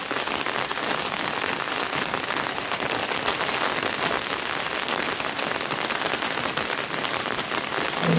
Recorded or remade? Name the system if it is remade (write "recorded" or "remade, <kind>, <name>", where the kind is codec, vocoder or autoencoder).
recorded